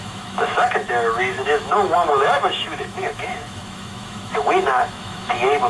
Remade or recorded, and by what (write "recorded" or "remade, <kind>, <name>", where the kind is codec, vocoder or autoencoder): remade, autoencoder, DAC-VAE